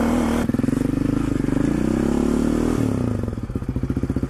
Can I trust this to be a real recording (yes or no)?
yes